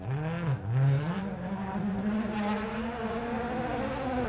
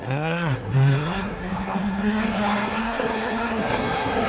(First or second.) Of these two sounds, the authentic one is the first